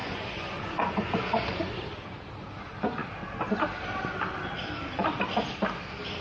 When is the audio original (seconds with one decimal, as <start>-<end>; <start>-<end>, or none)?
1.7-6.2